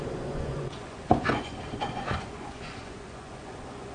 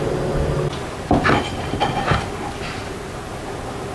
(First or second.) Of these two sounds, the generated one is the first